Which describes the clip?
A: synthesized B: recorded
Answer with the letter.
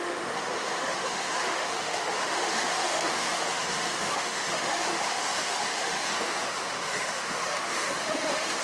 A